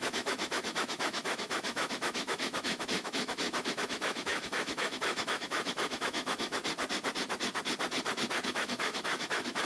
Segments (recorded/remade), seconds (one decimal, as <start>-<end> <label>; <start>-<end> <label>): 0.0-6.6 remade; 6.6-8.5 recorded; 8.5-9.6 remade